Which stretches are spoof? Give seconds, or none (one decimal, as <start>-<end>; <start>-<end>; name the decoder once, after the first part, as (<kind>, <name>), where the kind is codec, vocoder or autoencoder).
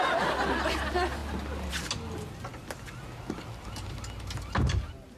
none